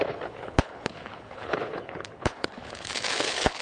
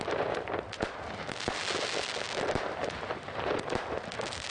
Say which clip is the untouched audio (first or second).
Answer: second